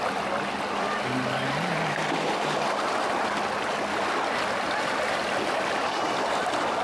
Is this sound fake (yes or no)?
no